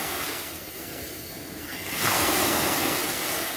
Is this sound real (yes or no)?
no